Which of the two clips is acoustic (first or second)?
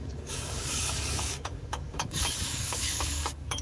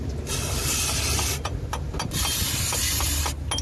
second